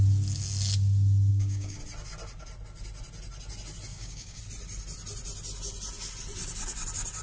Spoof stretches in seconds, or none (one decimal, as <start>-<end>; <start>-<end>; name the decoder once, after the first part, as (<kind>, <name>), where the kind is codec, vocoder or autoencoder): 1.3-1.8 (codec, DAC); 3.9-4.4